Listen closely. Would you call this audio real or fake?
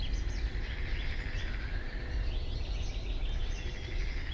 real